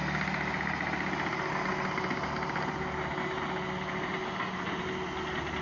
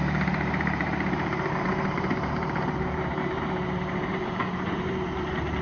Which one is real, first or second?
first